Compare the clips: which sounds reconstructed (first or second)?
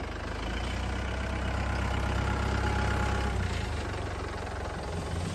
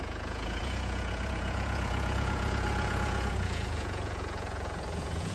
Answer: second